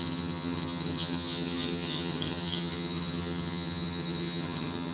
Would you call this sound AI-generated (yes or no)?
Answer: yes